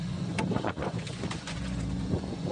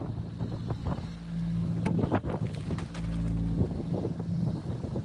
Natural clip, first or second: second